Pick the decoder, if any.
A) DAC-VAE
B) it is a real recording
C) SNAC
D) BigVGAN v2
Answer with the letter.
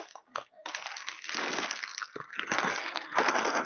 C